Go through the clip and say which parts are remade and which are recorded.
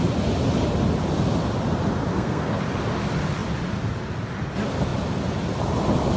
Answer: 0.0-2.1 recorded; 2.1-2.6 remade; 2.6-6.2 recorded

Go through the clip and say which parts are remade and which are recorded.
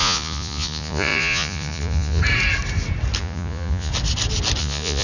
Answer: 0.0-2.2 remade; 2.2-3.2 recorded; 3.2-3.9 remade; 3.9-4.6 recorded; 4.6-5.0 remade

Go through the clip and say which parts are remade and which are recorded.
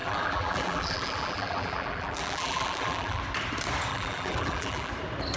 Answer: 0.0-3.2 remade; 3.2-3.9 recorded; 3.9-4.9 remade; 4.9-5.4 recorded